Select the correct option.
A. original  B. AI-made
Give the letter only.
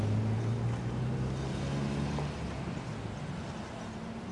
A